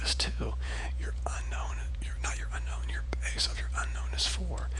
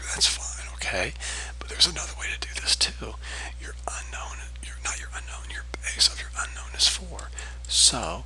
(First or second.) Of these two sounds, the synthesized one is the first